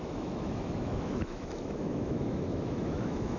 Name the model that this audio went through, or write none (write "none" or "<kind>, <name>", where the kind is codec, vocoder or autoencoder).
autoencoder, DAC-VAE